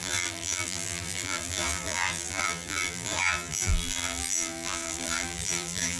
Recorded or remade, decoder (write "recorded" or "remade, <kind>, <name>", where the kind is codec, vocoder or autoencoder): remade, vocoder, BigVGAN v2